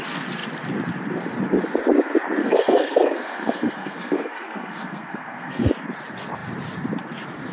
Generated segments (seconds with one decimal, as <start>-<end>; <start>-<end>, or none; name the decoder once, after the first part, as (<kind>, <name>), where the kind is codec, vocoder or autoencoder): 2.4-5.7 (codec, SNAC)